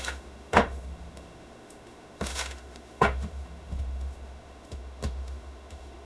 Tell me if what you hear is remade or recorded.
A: remade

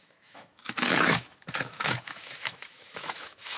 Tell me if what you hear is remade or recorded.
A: remade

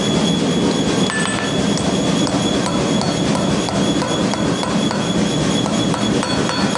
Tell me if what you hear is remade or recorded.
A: recorded